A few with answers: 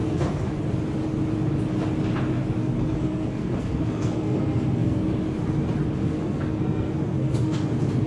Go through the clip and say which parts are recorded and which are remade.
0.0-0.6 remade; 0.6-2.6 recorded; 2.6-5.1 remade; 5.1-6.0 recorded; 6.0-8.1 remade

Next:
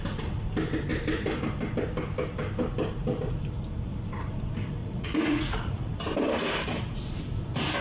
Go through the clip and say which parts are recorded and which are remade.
0.0-4.8 recorded; 4.8-5.9 remade; 5.9-7.8 recorded

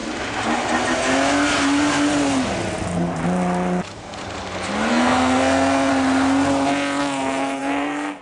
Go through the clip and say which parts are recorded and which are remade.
0.0-4.9 recorded; 4.9-5.9 remade; 5.9-7.0 recorded; 7.0-8.2 remade

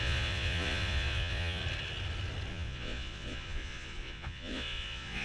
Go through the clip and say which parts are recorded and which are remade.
0.0-1.6 remade; 1.6-2.5 recorded; 2.5-5.2 remade